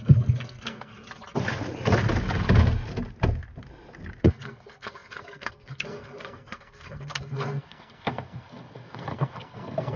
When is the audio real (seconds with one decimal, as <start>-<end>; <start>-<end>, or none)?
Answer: 0.9-4.2